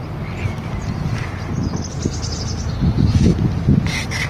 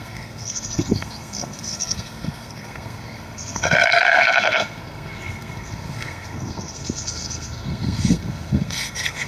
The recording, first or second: first